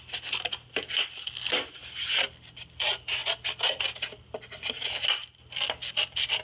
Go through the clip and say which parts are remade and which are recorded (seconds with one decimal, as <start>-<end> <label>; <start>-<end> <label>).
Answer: 0.0-6.4 recorded